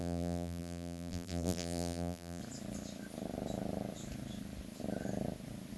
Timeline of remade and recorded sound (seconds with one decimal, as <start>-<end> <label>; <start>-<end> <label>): 0.0-2.4 remade; 2.4-5.8 recorded